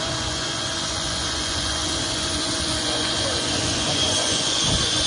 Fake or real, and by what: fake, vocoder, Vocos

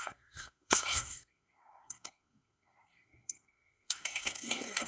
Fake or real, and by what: fake, codec, SNAC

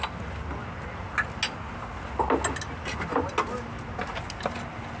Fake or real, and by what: real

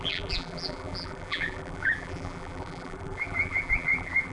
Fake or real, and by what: fake, vocoder, BigVGAN v2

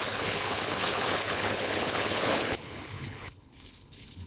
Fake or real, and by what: fake, codec, HILCodec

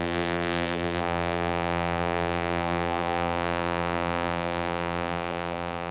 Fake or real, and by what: fake, vocoder, BigVGAN v2